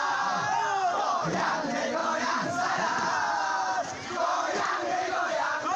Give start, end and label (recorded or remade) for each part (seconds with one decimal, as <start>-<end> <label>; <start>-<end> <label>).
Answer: 0.0-2.0 recorded; 2.0-5.8 remade